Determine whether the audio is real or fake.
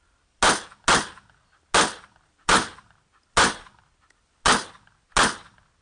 real